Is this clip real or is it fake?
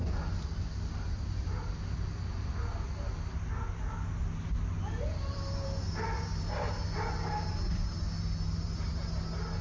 real